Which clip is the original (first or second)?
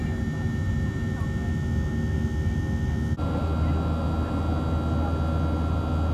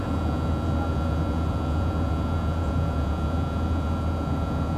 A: first